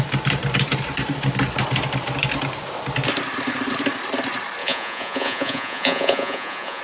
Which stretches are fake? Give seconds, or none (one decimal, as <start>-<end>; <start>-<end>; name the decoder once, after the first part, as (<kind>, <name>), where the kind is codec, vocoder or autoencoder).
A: 4.6-6.8 (vocoder, Vocos)